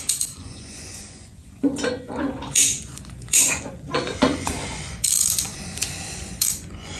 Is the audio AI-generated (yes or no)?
yes